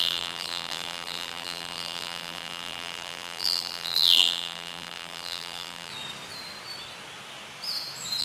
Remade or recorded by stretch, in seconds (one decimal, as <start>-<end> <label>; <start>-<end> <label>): 0.0-5.9 remade; 5.9-8.2 recorded